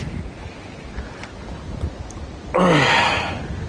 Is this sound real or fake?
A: real